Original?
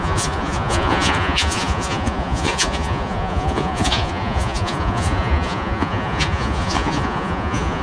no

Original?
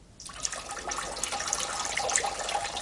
yes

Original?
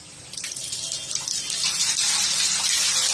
yes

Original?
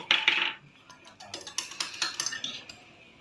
yes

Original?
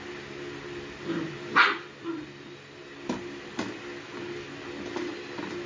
yes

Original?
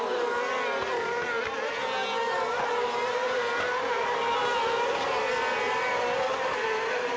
yes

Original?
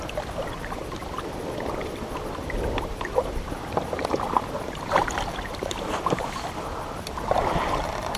no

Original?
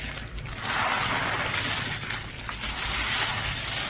yes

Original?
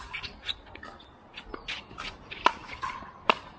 yes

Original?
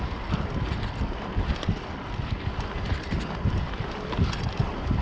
yes